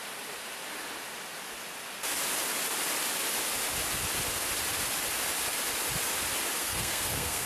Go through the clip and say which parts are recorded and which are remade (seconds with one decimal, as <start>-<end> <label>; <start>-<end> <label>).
0.0-6.6 recorded; 6.6-7.5 remade